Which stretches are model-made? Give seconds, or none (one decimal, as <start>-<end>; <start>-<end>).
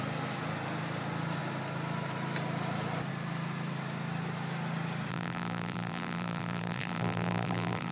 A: 5.1-7.9